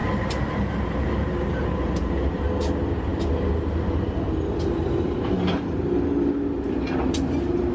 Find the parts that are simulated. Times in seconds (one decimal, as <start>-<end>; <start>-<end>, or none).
0.0-2.4